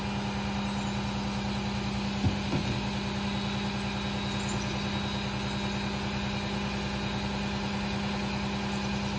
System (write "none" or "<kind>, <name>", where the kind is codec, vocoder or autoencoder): none